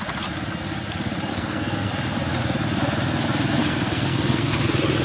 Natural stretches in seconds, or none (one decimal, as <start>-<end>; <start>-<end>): 0.0-1.3; 1.9-3.6; 4.6-5.0